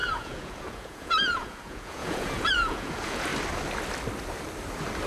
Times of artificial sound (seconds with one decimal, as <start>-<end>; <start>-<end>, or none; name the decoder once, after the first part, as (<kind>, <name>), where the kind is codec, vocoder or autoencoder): 0.0-3.3 (vocoder, Vocos)